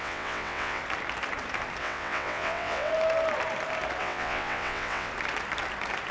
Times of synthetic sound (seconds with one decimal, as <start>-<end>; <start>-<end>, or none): 0.0-0.8; 1.8-2.9; 4.0-5.1